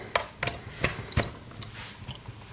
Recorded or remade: recorded